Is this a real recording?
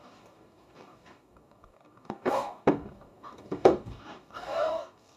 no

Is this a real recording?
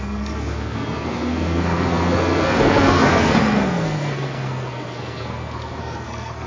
no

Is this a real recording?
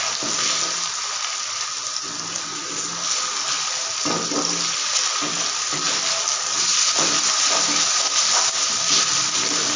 yes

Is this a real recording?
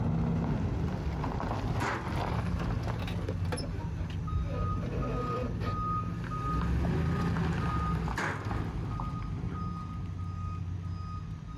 yes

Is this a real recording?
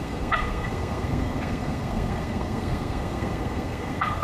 no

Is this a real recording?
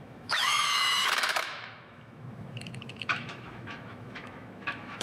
no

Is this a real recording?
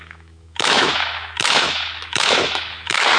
no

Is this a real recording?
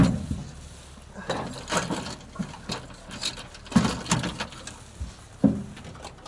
yes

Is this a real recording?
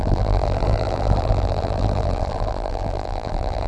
no